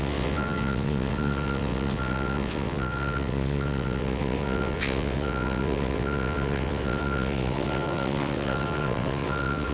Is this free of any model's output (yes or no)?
no